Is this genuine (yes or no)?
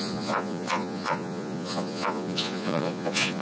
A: no